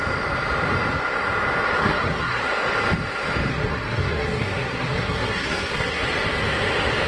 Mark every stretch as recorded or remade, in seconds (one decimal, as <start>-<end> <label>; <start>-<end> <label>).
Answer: 0.0-1.8 recorded; 1.8-2.4 remade; 2.4-3.5 recorded; 3.5-6.0 remade; 6.0-7.1 recorded